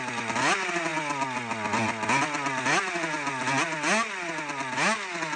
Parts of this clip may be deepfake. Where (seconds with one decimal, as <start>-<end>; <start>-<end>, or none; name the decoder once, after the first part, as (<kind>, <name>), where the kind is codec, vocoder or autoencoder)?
none